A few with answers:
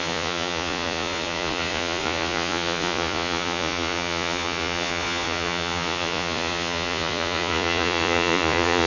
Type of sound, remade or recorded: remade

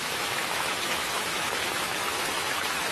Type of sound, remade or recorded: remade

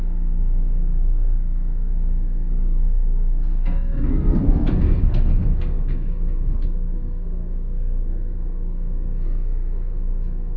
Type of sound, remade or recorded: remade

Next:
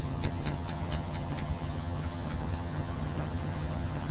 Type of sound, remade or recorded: remade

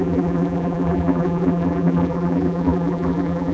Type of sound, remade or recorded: remade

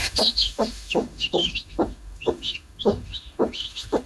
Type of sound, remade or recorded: remade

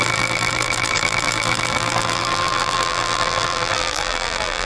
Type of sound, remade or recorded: remade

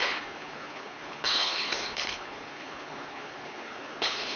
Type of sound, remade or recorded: remade